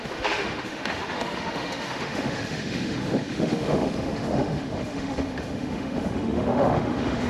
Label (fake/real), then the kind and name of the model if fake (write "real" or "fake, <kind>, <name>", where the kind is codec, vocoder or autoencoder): fake, autoencoder, DAC-VAE